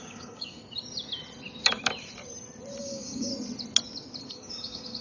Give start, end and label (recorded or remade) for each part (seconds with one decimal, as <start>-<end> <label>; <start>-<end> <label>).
0.0-0.6 remade; 0.6-2.8 recorded; 2.8-3.3 remade; 3.3-4.3 recorded; 4.3-5.0 remade